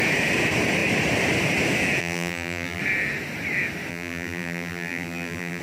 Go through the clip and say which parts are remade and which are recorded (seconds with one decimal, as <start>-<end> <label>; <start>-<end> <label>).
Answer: 0.0-2.0 recorded; 2.0-2.8 remade; 2.8-3.9 recorded; 3.9-5.6 remade